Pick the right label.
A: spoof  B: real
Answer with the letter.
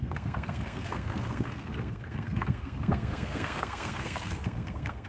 A